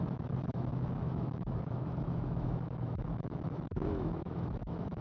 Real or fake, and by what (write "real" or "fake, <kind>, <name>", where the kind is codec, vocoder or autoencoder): fake, autoencoder, DAC-VAE